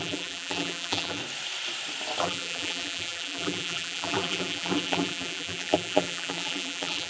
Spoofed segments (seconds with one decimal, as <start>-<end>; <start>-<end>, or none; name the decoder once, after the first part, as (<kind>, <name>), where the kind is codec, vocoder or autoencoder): 0.0-1.2 (vocoder, BigVGAN v2); 2.2-7.1